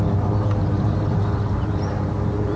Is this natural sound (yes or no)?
no